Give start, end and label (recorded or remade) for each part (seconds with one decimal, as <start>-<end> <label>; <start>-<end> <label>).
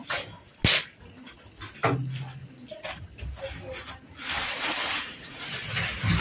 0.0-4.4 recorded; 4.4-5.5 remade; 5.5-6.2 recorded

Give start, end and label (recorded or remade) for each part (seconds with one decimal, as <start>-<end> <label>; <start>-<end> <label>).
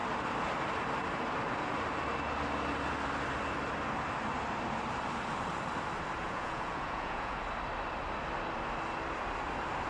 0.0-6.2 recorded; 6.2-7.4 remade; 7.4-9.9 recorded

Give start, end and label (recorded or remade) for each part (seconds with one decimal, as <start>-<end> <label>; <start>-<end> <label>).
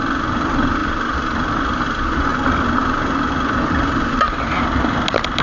0.0-5.4 recorded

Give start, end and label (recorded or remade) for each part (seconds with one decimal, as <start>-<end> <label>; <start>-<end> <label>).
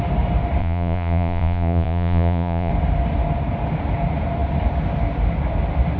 0.0-0.6 recorded; 0.6-2.7 remade; 2.7-6.0 recorded